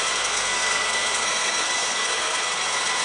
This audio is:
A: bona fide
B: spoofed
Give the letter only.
B